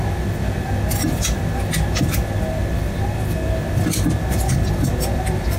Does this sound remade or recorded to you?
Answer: recorded